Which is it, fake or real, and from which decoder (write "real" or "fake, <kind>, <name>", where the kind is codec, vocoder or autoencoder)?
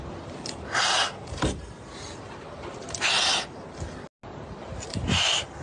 real